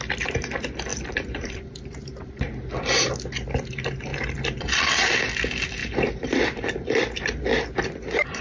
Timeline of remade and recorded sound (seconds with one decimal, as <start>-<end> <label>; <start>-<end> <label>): 0.0-0.9 recorded; 0.9-2.3 remade; 2.3-4.1 recorded; 4.1-4.7 remade; 4.7-5.8 recorded; 5.8-6.7 remade; 6.7-8.4 recorded